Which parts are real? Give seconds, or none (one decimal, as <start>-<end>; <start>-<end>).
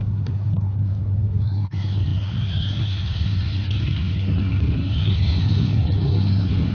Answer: none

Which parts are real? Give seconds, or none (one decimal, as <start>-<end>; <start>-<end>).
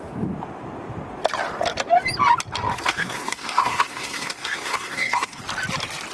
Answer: 0.0-2.7; 5.4-6.1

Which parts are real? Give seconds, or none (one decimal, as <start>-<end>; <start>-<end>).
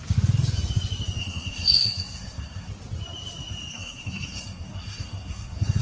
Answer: 0.0-1.2; 2.7-3.7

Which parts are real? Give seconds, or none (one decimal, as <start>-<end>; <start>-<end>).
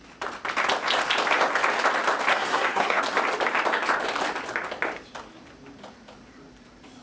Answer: 0.0-2.3; 3.0-7.0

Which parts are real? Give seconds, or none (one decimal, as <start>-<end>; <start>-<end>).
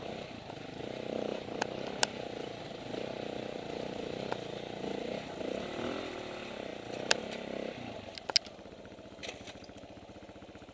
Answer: 0.0-10.7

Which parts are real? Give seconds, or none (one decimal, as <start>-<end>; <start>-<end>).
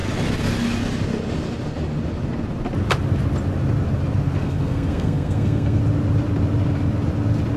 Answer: 0.0-4.4; 5.8-7.6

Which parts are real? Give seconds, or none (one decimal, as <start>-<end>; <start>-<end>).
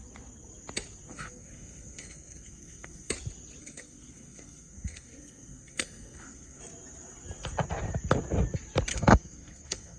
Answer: 0.0-1.1; 3.1-3.6; 6.6-8.9